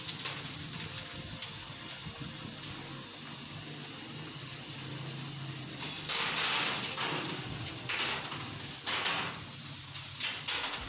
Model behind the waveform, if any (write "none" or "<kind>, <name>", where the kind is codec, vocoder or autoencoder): none